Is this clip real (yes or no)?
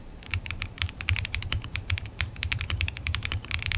no